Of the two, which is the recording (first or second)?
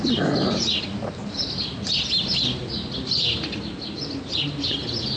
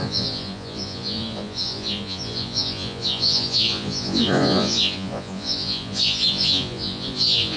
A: first